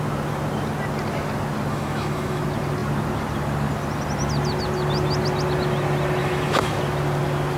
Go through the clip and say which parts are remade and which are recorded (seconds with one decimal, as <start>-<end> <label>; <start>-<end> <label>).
0.0-1.7 recorded; 1.7-2.4 remade; 2.4-6.2 recorded; 6.2-6.8 remade; 6.8-7.6 recorded